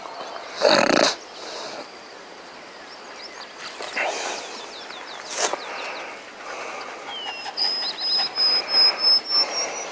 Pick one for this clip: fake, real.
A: real